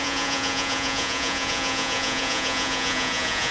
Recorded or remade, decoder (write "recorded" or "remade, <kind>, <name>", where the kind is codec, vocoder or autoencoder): remade, vocoder, Vocos